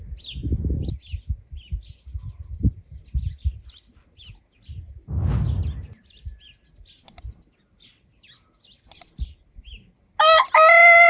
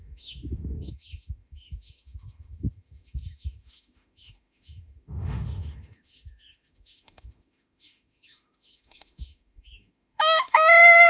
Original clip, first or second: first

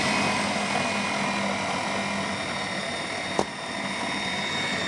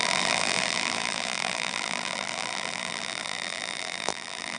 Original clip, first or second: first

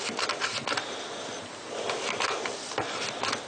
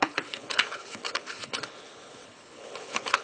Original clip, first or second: first